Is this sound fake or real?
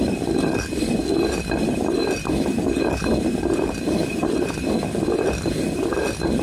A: real